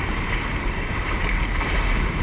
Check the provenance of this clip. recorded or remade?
recorded